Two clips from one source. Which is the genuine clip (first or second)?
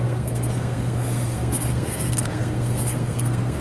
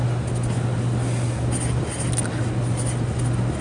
second